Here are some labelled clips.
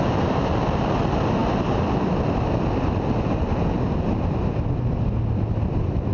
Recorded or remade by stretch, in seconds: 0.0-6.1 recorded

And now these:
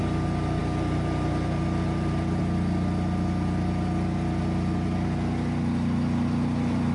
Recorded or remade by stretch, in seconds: 0.0-6.9 recorded

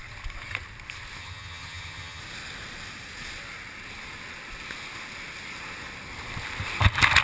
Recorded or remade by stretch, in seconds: 0.0-1.2 recorded; 1.2-2.2 remade; 2.2-7.2 recorded

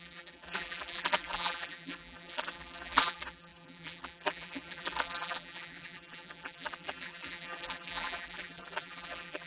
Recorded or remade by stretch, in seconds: 0.0-9.5 remade

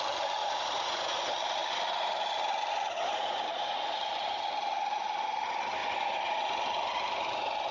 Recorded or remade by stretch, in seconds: 0.0-0.4 recorded; 0.4-1.2 remade; 1.2-3.1 recorded; 3.1-4.0 remade; 4.0-5.8 recorded; 5.8-6.4 remade; 6.4-7.7 recorded

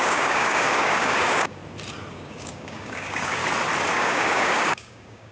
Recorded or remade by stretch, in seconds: 0.0-1.6 remade; 1.6-2.1 recorded; 2.1-3.4 remade; 3.4-3.9 recorded; 3.9-5.3 remade